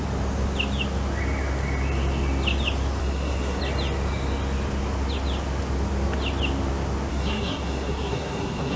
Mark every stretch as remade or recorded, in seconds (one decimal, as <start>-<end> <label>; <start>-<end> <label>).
0.0-3.0 recorded; 3.0-3.6 remade; 3.6-7.1 recorded; 7.1-8.8 remade